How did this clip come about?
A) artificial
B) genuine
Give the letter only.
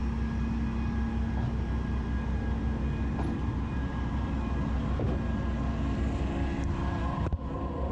B